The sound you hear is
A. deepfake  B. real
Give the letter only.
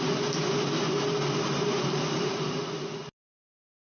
B